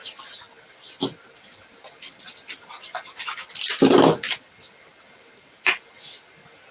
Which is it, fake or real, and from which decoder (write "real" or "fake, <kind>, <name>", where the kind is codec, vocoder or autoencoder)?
real